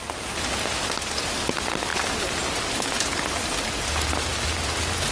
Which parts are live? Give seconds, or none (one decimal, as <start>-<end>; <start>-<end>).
0.0-5.1